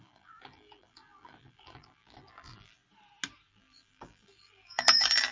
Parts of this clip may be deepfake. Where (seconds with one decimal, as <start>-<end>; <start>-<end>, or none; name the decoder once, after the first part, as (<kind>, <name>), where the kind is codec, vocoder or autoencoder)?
0.0-2.8 (vocoder, BigVGAN v2); 3.5-5.3